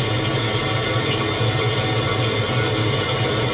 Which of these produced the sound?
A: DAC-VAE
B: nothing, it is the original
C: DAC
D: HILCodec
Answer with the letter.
B